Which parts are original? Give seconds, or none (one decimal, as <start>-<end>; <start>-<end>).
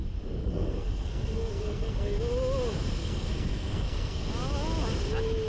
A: 0.0-0.4; 2.2-3.0; 4.3-5.5